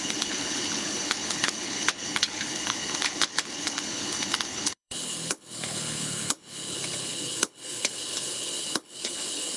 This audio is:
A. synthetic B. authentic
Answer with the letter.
A